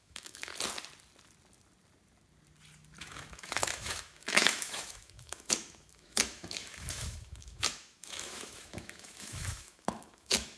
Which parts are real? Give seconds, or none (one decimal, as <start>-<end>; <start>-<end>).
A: 0.5-3.0